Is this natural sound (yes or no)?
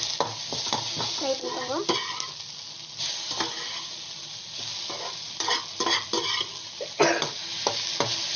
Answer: yes